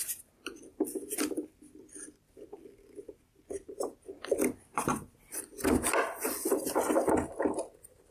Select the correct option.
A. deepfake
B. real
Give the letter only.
B